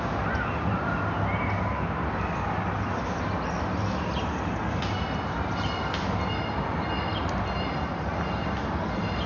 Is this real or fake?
real